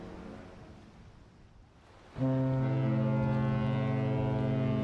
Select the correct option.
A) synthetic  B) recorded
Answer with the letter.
B